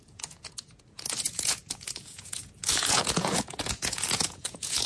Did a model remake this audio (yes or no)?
yes